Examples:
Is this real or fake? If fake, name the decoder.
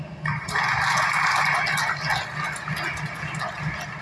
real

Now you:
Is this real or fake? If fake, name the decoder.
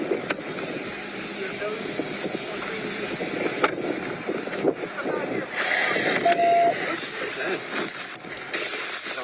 real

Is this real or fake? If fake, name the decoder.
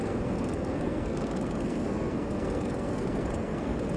fake, codec, SNAC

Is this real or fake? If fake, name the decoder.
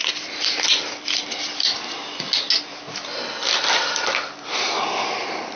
real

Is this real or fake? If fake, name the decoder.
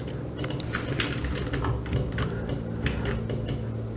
real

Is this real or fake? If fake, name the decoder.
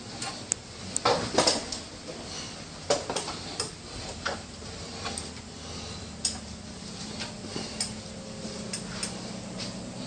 real